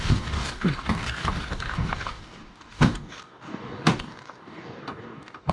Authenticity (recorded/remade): remade